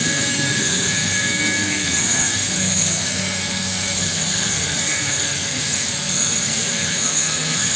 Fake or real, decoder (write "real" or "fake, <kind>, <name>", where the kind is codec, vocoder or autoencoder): fake, codec, SNAC